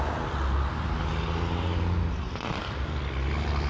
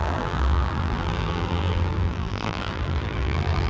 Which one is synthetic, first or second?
second